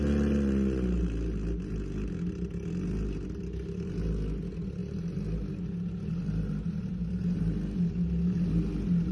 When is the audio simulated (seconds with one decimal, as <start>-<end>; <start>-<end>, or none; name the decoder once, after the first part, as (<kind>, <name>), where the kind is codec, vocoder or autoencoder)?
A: none